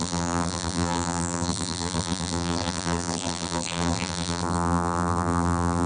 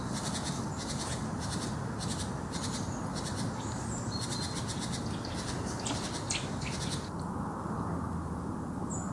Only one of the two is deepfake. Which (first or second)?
first